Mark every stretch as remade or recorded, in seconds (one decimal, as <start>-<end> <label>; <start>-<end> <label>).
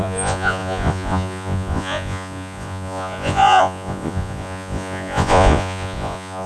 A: 0.0-6.5 remade